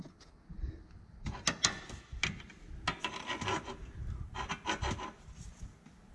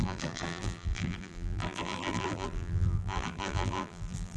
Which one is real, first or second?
first